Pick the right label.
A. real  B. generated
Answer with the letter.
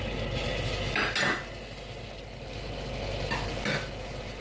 A